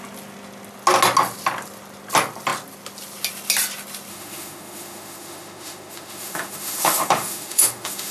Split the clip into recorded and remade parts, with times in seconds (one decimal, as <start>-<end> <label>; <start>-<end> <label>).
0.0-4.1 recorded; 4.1-8.1 remade